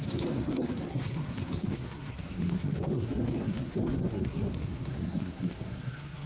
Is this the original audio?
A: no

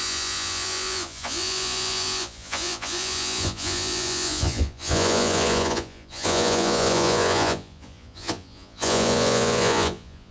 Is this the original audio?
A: no